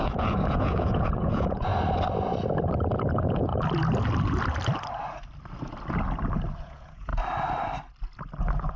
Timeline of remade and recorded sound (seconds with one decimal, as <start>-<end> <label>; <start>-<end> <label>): 0.0-1.7 remade; 1.7-3.1 recorded; 3.1-3.5 remade; 3.5-6.6 recorded; 6.6-7.1 remade; 7.1-8.8 recorded